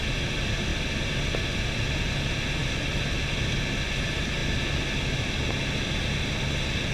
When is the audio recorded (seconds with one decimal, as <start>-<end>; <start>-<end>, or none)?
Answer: 0.0-2.6; 3.5-6.9